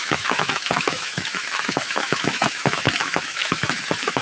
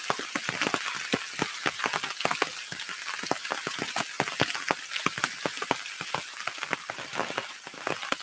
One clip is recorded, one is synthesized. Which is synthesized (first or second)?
first